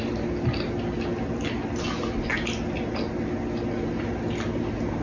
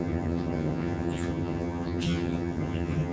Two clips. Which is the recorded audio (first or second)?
first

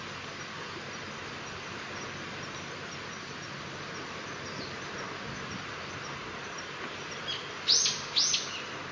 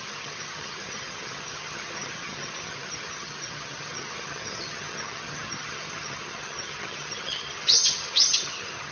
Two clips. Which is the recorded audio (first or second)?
first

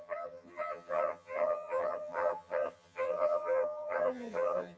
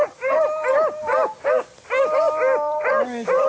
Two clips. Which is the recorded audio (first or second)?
second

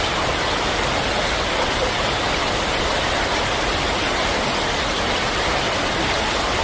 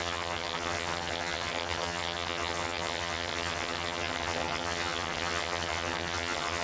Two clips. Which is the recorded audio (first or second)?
first